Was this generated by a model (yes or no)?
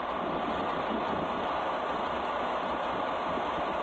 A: no